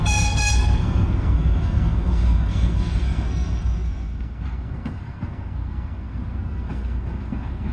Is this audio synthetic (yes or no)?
yes